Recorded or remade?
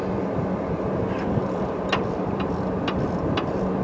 recorded